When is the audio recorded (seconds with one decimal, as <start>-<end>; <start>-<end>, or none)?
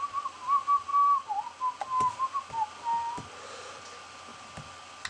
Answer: 0.0-5.1